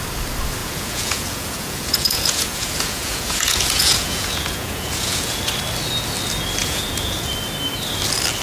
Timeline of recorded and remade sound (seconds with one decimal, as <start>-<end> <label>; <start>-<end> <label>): 0.0-0.6 recorded; 0.6-5.4 remade; 5.4-6.6 recorded; 6.6-7.3 remade; 7.3-8.4 recorded